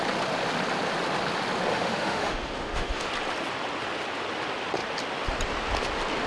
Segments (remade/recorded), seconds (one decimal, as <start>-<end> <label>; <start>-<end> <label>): 0.0-1.7 recorded; 1.7-3.1 remade; 3.1-6.3 recorded